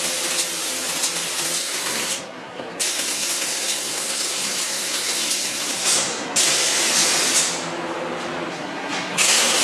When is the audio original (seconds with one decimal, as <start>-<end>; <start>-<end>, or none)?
0.0-1.6; 6.8-8.5